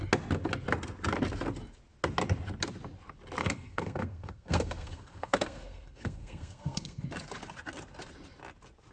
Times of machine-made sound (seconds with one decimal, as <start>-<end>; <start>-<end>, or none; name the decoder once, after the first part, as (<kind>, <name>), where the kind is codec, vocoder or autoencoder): 3.4-7.0 (codec, SNAC)